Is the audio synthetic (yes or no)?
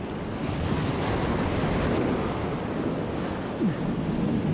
no